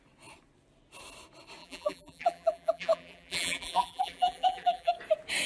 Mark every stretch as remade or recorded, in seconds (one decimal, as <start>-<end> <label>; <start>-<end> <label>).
0.0-1.6 recorded; 1.6-4.9 remade; 4.9-5.5 recorded